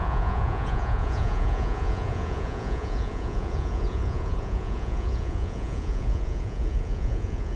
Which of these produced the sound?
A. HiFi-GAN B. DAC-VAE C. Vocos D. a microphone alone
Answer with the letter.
C